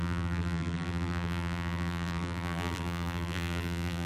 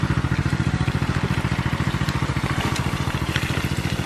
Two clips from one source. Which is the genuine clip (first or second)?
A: second